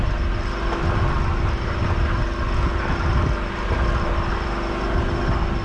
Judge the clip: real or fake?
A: real